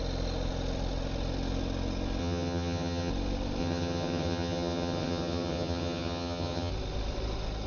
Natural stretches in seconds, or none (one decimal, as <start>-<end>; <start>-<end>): 0.0-2.2; 3.1-3.6; 6.7-7.7